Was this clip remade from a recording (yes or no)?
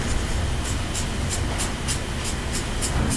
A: no